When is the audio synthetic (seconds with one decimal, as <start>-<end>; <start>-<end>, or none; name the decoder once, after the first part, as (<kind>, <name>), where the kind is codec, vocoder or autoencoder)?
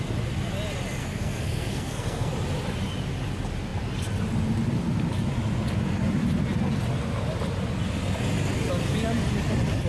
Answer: 1.0-2.3 (codec, SNAC)